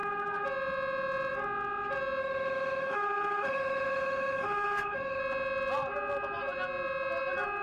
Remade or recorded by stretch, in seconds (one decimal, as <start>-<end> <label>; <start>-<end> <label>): 0.0-2.2 recorded; 2.2-5.2 remade; 5.2-7.6 recorded